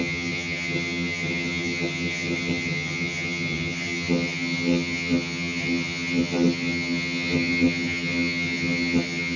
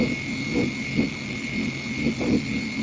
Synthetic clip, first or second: first